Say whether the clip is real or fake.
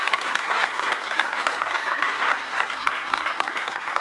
fake